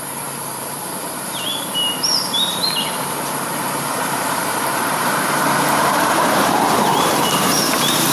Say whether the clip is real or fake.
fake